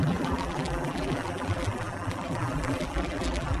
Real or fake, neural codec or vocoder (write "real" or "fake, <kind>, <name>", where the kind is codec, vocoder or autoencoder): fake, vocoder, BigVGAN v2